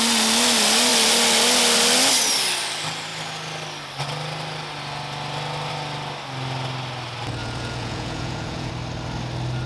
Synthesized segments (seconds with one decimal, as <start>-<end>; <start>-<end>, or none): 7.4-8.7